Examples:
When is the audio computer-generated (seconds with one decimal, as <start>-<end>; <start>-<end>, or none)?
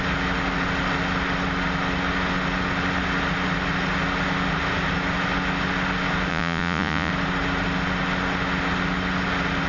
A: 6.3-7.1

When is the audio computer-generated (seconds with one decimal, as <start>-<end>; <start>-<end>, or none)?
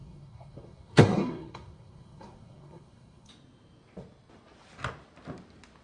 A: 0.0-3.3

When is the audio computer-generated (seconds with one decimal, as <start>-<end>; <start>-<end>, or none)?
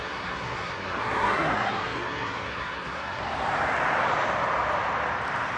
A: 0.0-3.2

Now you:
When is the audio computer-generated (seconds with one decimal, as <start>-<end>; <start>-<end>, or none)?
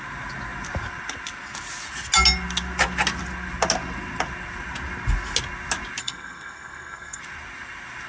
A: 6.0-7.2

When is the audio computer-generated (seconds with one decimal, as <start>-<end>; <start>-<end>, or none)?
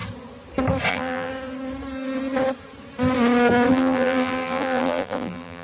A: 0.9-1.3; 3.7-5.6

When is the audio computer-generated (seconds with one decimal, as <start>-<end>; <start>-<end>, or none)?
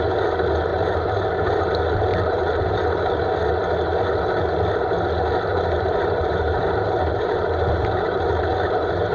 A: 0.7-1.7; 2.1-3.1; 5.5-9.1